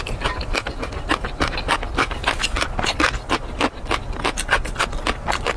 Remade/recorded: recorded